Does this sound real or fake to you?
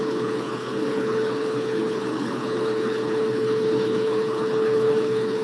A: fake